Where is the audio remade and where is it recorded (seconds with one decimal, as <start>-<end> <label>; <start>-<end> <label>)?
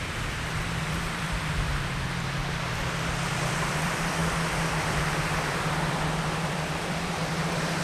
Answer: 0.0-2.4 remade; 2.4-2.9 recorded; 2.9-7.8 remade